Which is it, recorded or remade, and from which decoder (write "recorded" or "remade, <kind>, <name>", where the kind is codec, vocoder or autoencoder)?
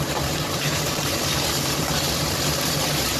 remade, vocoder, BigVGAN v2